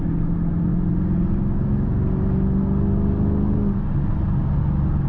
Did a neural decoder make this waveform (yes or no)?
no